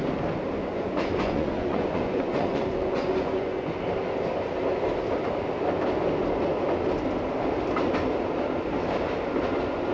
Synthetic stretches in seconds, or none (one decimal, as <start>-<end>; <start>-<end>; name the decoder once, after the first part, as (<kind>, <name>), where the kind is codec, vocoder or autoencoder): 0.6-3.7 (vocoder, Vocos)

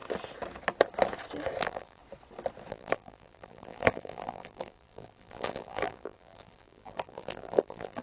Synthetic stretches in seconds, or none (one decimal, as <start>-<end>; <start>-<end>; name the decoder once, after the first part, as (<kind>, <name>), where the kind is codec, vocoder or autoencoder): 1.6-2.0 (vocoder, BigVGAN v2); 2.7-8.0

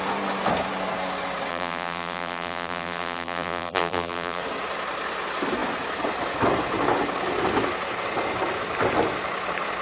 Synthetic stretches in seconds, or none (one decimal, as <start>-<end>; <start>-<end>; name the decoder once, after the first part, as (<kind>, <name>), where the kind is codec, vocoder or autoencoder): 1.5-4.4 (vocoder, BigVGAN v2)

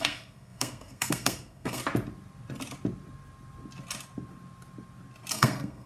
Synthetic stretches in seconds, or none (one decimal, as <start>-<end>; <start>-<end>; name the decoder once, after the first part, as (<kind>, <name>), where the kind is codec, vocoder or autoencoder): 0.0-1.8 (codec, SNAC); 5.3-5.9

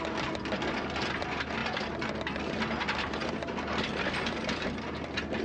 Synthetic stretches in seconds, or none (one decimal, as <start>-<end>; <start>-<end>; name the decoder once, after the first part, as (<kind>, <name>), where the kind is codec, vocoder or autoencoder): none

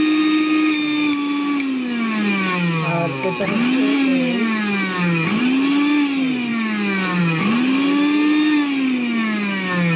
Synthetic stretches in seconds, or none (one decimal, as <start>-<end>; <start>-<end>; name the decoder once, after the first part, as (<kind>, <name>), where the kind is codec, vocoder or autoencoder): none